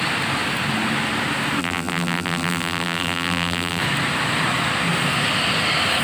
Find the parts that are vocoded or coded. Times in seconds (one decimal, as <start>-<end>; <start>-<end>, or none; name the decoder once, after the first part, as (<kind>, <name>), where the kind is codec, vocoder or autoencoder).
1.6-3.8 (vocoder, BigVGAN v2)